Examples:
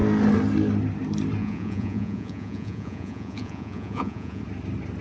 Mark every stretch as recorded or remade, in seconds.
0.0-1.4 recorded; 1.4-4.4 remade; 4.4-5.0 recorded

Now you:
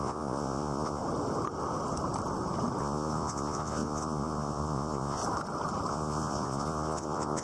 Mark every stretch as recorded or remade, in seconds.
0.0-1.0 remade; 1.0-2.8 recorded; 2.8-5.2 remade; 5.2-5.9 recorded; 5.9-7.4 remade

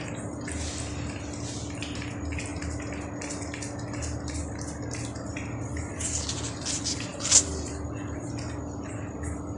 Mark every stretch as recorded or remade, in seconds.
0.0-9.6 recorded

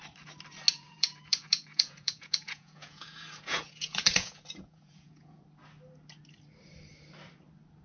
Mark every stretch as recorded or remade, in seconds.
0.0-0.7 recorded; 0.7-5.4 remade; 5.4-7.8 recorded